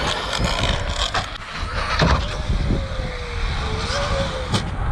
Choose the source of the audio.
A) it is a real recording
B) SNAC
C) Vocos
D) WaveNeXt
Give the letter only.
A